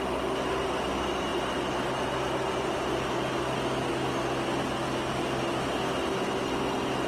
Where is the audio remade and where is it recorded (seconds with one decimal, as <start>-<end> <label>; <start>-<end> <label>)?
0.0-7.1 recorded